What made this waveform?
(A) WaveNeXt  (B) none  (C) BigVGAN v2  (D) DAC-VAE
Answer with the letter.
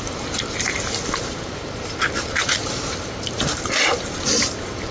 C